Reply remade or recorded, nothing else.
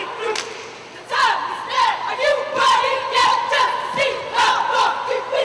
recorded